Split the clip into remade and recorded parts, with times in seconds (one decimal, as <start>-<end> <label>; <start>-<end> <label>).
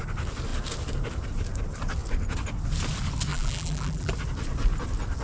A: 0.0-3.3 recorded; 3.3-4.1 remade; 4.1-5.2 recorded